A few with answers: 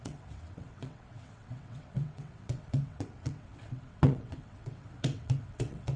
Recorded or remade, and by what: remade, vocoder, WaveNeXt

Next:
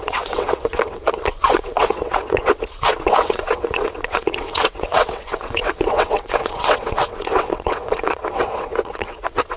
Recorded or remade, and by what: remade, vocoder, WaveNeXt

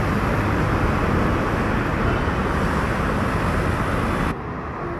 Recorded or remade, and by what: recorded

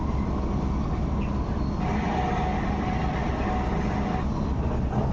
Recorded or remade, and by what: recorded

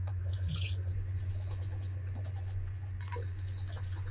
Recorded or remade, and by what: remade, vocoder, Vocos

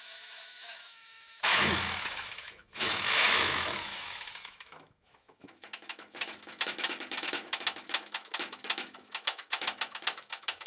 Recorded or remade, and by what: remade, autoencoder, DAC-VAE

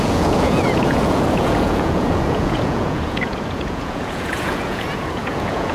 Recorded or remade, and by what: remade, vocoder, Vocos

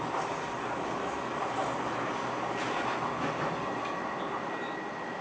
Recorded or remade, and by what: recorded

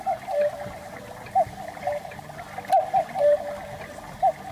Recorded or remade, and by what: recorded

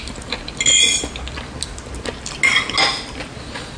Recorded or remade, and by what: recorded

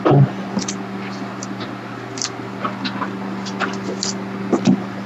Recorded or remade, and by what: recorded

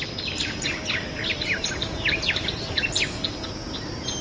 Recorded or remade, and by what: recorded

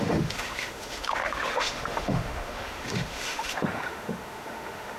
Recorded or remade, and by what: remade, autoencoder, DAC-VAE